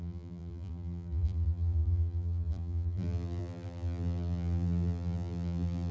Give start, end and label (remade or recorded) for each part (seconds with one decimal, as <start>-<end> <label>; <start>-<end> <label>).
0.0-5.9 remade